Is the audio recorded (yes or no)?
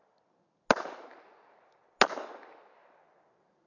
yes